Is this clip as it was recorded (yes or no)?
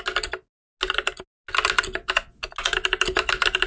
yes